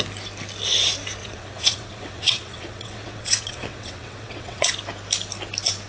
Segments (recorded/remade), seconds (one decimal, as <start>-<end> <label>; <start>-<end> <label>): 0.0-1.2 recorded; 1.2-4.7 remade; 4.7-5.9 recorded